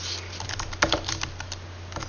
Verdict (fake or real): real